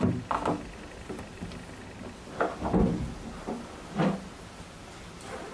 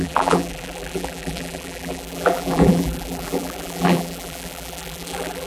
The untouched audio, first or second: first